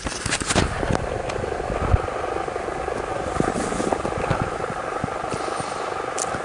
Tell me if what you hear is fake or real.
real